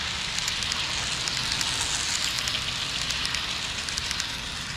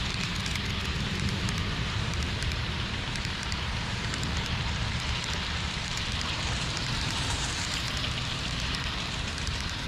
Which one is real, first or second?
first